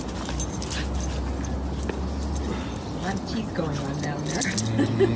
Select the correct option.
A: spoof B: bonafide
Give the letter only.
B